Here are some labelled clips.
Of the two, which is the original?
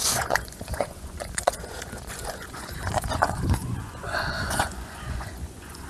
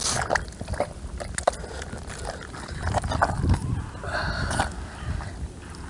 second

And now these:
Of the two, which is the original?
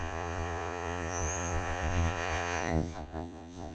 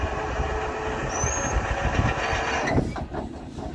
second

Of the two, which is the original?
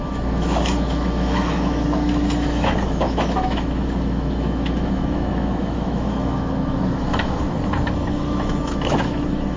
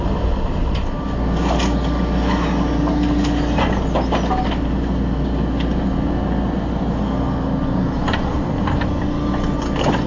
second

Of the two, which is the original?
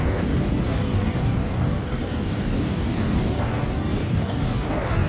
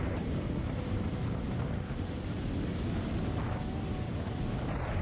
second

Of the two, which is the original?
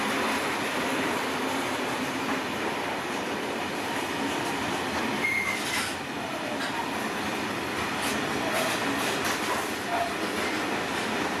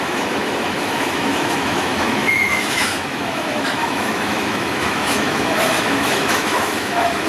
first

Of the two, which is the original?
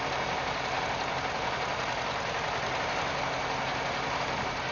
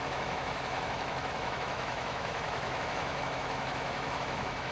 first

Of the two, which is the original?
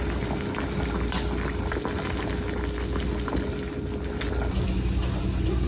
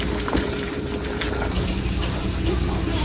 first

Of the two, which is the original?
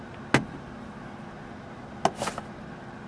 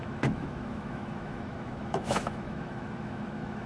first